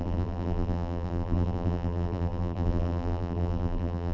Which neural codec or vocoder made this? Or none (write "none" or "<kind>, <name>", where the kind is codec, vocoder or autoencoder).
vocoder, BigVGAN v2